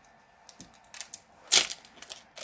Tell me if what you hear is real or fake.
real